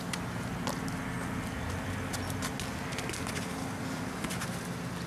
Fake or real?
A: real